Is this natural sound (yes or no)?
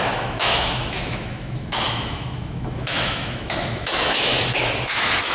no